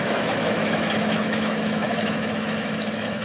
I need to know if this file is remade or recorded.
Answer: remade